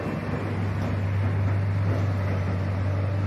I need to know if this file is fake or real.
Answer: real